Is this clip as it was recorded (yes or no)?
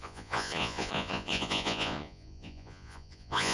no